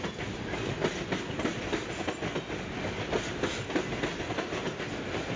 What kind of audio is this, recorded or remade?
recorded